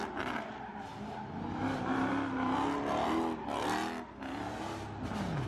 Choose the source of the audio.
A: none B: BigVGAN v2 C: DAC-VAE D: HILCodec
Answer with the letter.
A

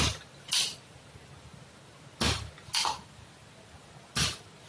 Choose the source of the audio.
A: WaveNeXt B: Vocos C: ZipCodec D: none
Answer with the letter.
D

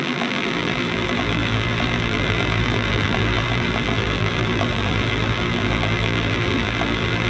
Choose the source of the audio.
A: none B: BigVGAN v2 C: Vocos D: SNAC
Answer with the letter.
B